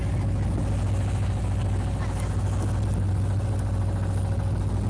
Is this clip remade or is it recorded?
recorded